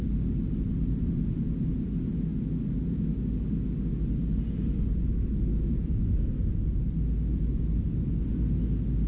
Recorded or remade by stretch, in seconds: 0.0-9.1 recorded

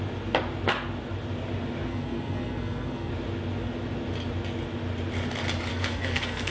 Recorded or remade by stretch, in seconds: 0.0-1.9 recorded; 1.9-3.1 remade; 3.1-5.7 recorded; 5.7-6.5 remade

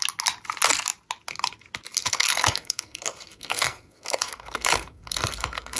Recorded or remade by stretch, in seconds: 0.0-2.0 recorded; 2.0-5.8 remade

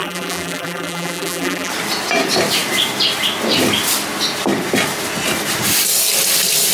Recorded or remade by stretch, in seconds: 0.0-1.7 remade; 1.7-6.7 recorded